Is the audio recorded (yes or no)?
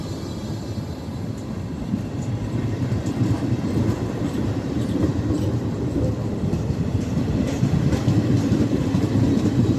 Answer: no